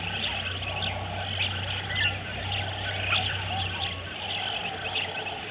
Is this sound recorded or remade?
recorded